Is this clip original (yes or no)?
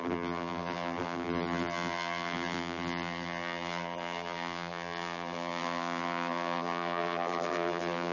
no